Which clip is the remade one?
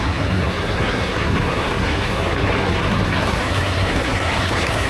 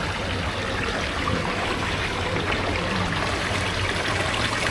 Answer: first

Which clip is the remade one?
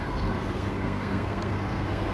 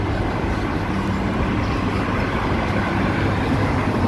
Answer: first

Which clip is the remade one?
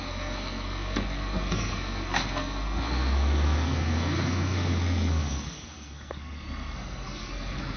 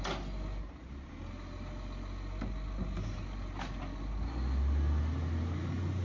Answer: first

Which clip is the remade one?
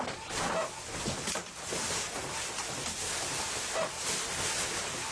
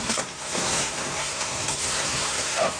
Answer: second